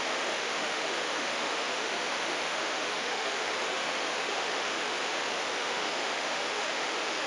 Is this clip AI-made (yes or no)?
yes